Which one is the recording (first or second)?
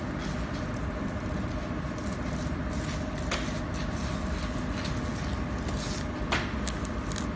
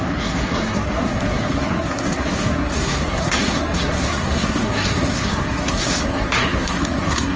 first